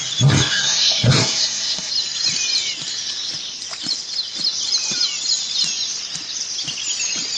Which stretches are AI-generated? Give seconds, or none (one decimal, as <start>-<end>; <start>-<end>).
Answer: 0.5-1.9

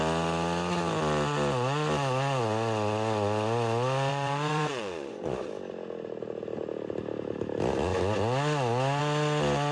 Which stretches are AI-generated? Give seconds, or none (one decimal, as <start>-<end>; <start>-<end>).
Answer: 4.1-5.5

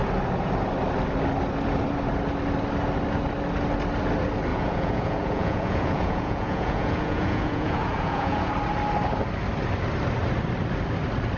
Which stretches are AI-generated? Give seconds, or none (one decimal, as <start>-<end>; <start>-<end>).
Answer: 4.5-8.5

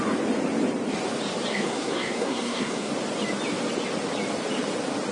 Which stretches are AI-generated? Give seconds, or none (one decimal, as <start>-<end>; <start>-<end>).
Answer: 1.5-2.9

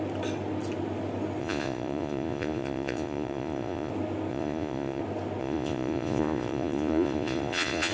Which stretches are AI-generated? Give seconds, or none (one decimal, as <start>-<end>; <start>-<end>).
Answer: 1.4-3.9; 4.3-5.0; 5.4-7.9

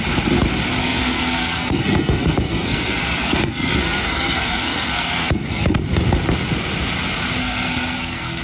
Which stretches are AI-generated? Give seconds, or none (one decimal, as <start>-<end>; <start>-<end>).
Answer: 0.8-5.8; 7.4-8.4

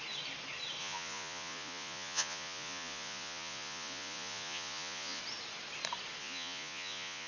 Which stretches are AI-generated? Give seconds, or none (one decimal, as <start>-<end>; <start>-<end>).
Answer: 0.8-5.2; 6.2-7.3